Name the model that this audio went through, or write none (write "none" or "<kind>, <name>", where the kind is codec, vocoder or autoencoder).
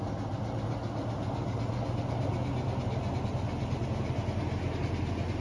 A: none